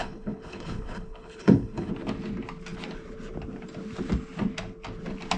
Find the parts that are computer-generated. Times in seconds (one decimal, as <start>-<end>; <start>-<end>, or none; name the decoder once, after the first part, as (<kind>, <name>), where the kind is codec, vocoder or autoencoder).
0.0-1.9 (codec, HILCodec)